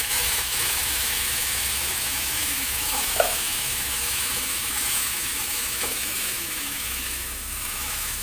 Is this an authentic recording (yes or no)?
no